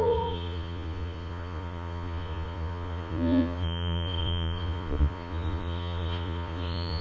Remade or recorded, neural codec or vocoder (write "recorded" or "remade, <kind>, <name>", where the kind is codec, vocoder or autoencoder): remade, vocoder, Vocos